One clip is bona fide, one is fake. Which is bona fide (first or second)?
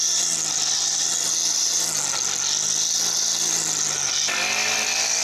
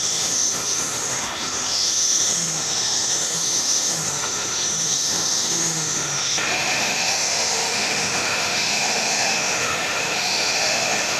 first